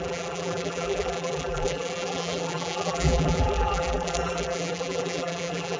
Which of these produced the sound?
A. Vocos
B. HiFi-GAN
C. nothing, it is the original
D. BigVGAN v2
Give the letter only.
D